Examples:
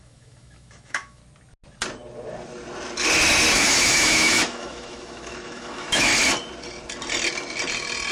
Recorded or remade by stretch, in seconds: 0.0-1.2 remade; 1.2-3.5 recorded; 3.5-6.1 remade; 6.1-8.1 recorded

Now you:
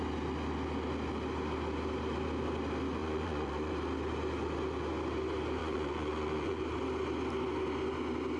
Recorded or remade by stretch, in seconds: 0.0-3.0 recorded; 3.0-3.7 remade; 3.7-5.6 recorded; 5.6-6.6 remade; 6.6-8.4 recorded

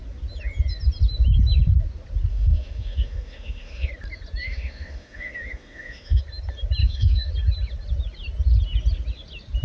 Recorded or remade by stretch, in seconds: 0.0-2.3 recorded; 2.3-3.9 remade; 3.9-4.4 recorded; 4.4-6.2 remade; 6.2-6.8 recorded; 6.8-7.3 remade; 7.3-9.6 recorded

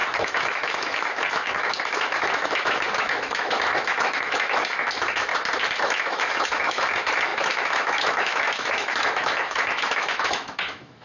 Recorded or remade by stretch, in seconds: 0.0-5.3 remade; 5.3-5.8 recorded; 5.8-11.0 remade

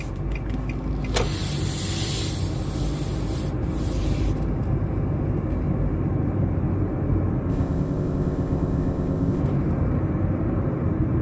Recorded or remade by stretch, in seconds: 0.0-7.5 recorded; 7.5-9.4 remade; 9.4-11.2 recorded

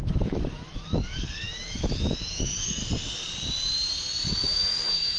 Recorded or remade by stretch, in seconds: 0.0-2.8 remade; 2.8-4.3 recorded; 4.3-5.2 remade